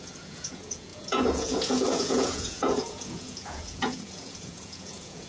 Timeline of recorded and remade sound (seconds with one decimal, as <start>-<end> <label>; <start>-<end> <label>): 0.0-5.3 remade